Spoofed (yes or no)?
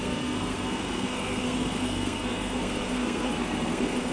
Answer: yes